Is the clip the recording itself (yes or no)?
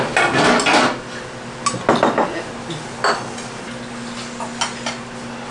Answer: yes